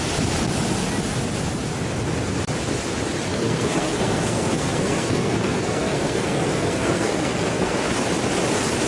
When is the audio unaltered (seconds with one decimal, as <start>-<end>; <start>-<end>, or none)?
0.0-3.3; 7.9-8.9